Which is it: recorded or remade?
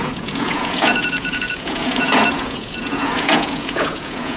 remade